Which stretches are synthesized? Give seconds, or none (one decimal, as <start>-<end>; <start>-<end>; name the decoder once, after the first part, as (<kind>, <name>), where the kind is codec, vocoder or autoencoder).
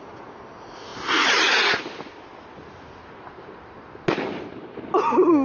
none